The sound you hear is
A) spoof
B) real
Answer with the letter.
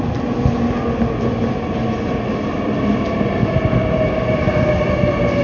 B